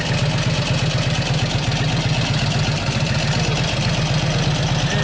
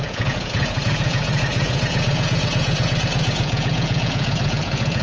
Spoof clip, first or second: second